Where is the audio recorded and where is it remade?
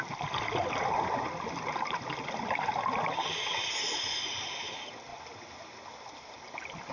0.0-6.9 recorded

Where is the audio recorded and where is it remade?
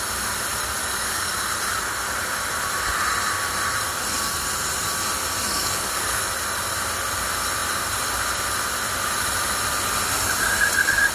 0.0-0.8 recorded; 0.8-1.3 remade; 1.3-5.5 recorded; 5.5-6.3 remade; 6.3-11.1 recorded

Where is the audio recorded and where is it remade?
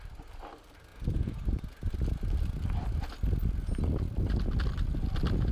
0.0-5.5 recorded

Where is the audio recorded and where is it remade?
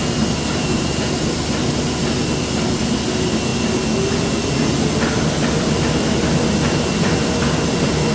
0.0-8.1 recorded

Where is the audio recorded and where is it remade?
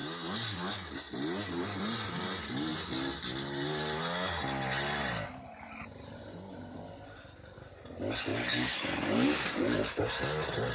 0.0-8.3 recorded; 8.3-10.0 remade; 10.0-10.7 recorded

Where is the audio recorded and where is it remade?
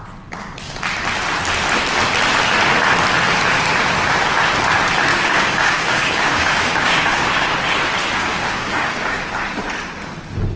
0.0-5.1 recorded; 5.1-7.6 remade; 7.6-8.0 recorded; 8.0-9.2 remade; 9.2-10.6 recorded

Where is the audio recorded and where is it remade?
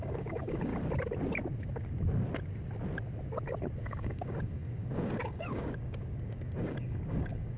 0.0-0.7 remade; 0.7-3.8 recorded; 3.8-7.6 remade